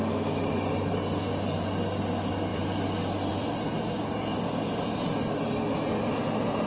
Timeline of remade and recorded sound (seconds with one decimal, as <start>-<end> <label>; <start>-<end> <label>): 0.0-6.7 recorded